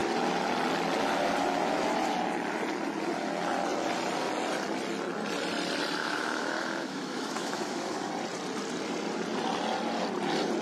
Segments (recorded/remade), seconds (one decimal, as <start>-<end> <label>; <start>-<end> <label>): 0.0-6.0 recorded; 6.0-8.1 remade; 8.1-10.6 recorded